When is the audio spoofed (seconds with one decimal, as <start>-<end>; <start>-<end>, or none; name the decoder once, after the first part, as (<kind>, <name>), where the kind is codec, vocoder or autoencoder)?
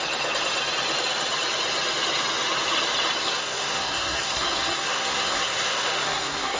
3.2-6.6 (codec, SNAC)